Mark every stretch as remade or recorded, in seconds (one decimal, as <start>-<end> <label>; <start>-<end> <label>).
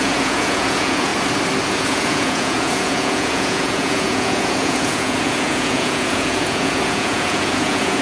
0.0-1.1 remade; 1.1-1.7 recorded; 1.7-8.0 remade